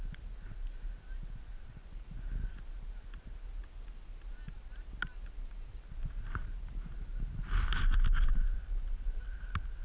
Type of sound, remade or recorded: recorded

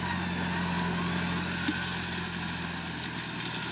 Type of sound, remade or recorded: recorded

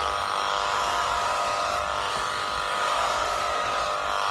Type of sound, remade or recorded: remade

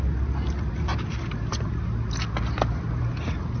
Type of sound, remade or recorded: recorded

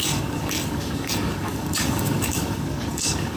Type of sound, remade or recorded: remade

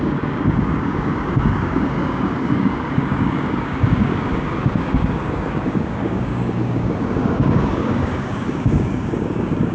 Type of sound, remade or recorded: remade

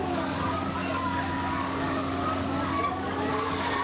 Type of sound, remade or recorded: remade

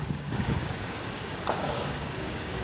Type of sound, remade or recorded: remade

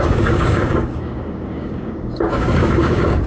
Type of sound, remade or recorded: remade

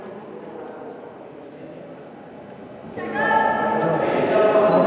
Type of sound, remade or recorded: recorded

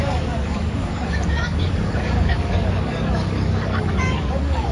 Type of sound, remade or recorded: remade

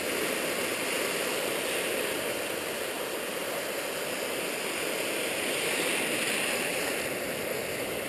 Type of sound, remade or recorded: recorded